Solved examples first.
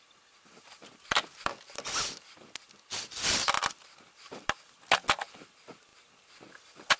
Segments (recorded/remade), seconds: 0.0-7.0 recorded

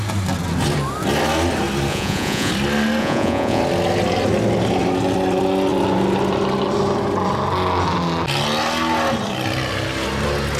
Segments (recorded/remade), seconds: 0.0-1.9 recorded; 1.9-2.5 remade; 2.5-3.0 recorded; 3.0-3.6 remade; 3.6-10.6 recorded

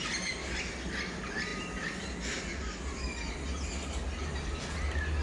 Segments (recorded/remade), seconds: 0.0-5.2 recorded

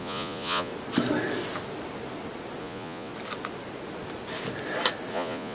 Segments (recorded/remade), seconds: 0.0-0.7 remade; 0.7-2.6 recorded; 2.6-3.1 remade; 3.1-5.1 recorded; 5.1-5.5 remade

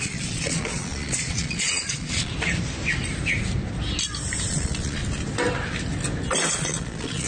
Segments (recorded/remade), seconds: 0.0-2.3 remade; 2.3-4.5 recorded; 4.5-5.0 remade; 5.0-6.5 recorded; 6.5-7.3 remade